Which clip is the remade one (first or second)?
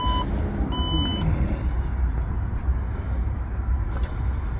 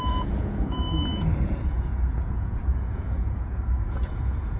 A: second